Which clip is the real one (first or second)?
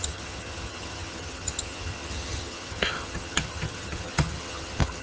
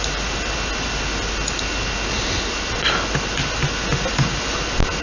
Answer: second